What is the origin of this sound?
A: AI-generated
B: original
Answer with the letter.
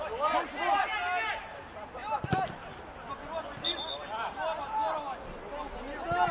B